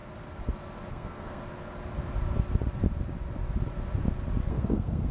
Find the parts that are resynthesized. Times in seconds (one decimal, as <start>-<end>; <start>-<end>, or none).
0.9-1.4; 4.5-5.1